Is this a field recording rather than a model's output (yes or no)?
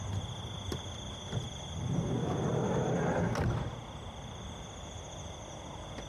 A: yes